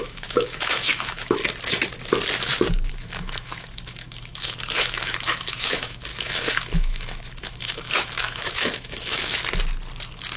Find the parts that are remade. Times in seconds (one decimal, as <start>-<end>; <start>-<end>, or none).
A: 0.0-1.4; 2.9-9.4